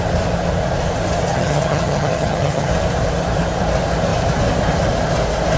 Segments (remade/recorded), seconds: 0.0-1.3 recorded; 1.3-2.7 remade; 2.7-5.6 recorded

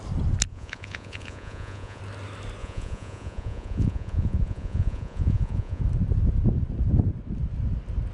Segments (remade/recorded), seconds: 0.0-0.5 recorded; 0.5-2.0 remade; 2.0-2.6 recorded; 2.6-5.8 remade; 5.8-8.1 recorded

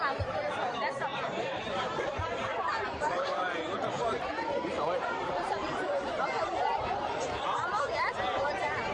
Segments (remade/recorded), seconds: 0.0-1.1 recorded; 1.1-6.2 remade; 6.2-8.9 recorded

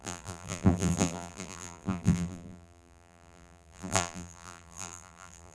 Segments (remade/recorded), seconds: 0.0-5.5 remade

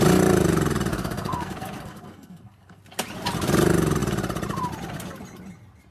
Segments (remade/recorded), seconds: 0.0-0.9 recorded; 0.9-2.8 remade; 2.8-5.9 recorded

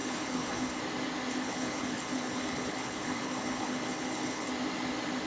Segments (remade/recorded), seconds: 0.0-0.8 remade; 0.8-1.3 recorded; 1.3-4.5 remade; 4.5-5.3 recorded

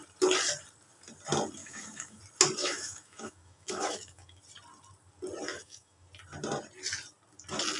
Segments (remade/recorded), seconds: 0.0-1.6 recorded; 1.6-2.2 remade; 2.2-2.6 recorded; 2.6-4.4 remade; 4.4-5.5 recorded; 5.5-6.1 remade; 6.1-7.8 recorded

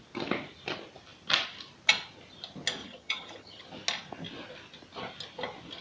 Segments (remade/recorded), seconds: 0.0-2.8 recorded; 2.8-3.6 remade; 3.6-5.8 recorded